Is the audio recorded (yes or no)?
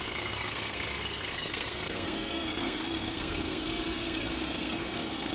no